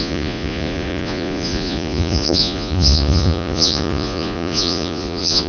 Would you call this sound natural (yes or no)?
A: no